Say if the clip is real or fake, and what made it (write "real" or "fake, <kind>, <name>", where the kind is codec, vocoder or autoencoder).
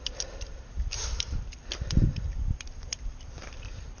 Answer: fake, vocoder, BigVGAN v2